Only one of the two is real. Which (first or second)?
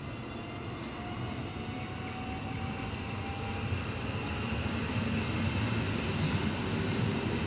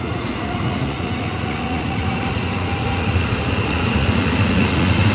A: first